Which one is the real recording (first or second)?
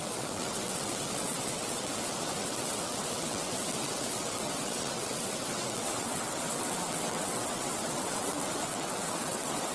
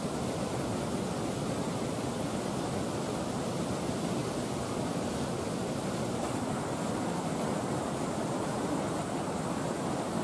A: second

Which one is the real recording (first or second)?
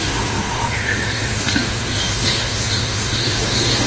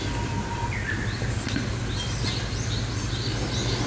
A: second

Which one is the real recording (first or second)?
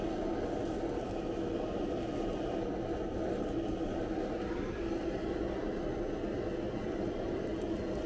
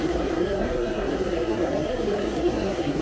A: first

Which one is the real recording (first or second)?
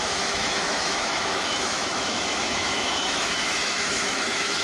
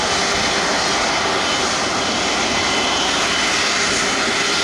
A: second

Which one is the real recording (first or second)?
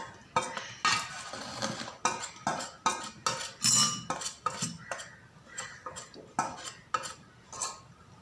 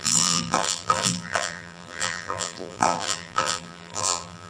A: first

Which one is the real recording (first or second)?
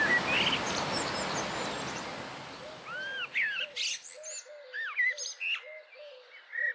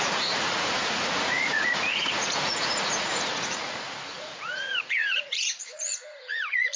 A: first